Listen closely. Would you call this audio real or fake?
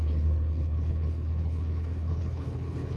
fake